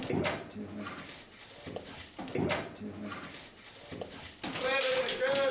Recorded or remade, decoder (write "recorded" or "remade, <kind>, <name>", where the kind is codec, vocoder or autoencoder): recorded